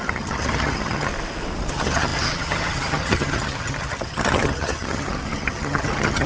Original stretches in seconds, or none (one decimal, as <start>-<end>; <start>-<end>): 1.1-1.7